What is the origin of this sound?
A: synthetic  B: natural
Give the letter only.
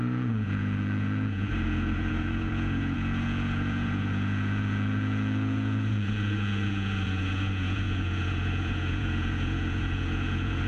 A